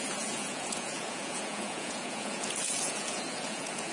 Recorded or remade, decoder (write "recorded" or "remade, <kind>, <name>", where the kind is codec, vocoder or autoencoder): remade, vocoder, Vocos